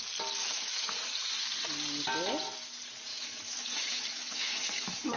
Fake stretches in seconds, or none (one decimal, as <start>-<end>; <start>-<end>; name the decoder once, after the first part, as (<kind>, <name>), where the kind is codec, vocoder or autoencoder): 0.4-1.3 (autoencoder, DAC-VAE); 3.1-5.2